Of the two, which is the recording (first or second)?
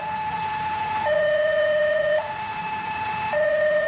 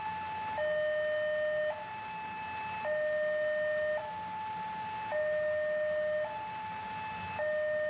second